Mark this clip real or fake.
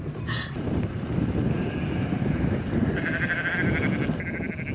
real